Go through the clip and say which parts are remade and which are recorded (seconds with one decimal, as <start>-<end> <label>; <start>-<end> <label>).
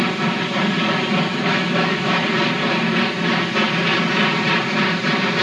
0.0-1.3 recorded; 1.3-2.2 remade; 2.2-5.4 recorded